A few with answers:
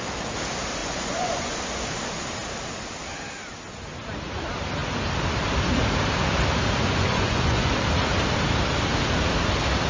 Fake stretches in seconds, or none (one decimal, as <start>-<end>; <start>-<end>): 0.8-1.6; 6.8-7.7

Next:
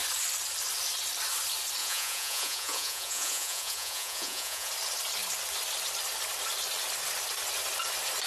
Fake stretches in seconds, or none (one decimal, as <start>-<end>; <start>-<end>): 1.8-4.7

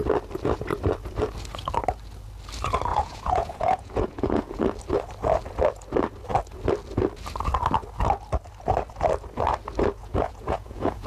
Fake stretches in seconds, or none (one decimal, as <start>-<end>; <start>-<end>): 2.9-4.6; 10.0-11.1